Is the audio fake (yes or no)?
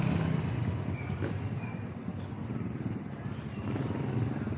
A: no